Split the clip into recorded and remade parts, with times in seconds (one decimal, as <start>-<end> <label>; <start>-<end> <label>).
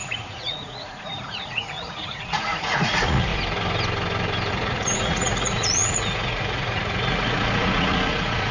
0.0-3.3 remade; 3.3-4.5 recorded; 4.5-8.5 remade